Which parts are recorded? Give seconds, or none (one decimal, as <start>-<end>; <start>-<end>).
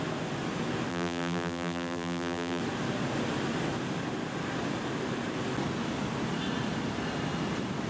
0.0-0.9; 2.6-7.9